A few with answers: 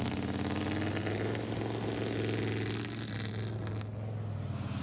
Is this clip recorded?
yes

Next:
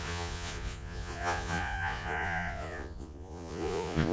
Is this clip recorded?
no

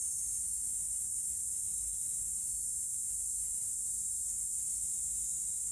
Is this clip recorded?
yes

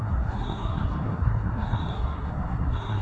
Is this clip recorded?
no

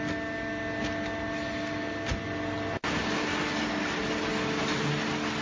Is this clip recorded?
yes